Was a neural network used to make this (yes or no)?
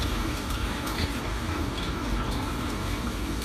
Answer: yes